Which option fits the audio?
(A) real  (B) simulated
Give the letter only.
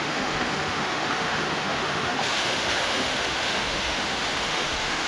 B